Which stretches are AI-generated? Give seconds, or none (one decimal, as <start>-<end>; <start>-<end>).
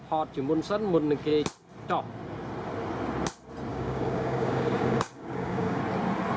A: 3.7-5.8